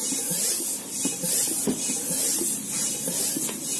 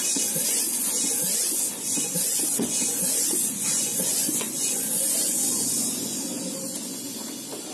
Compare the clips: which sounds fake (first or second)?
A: second